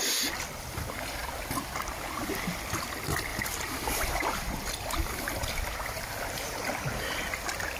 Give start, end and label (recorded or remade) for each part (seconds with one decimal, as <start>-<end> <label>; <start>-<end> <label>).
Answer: 0.0-3.3 recorded; 3.3-5.2 remade; 5.2-7.8 recorded